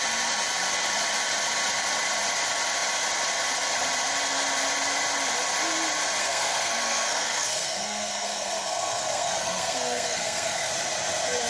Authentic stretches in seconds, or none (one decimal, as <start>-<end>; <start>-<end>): 0.0-6.2; 10.7-11.5